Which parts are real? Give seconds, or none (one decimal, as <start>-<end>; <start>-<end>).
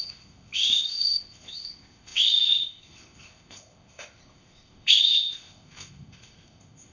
none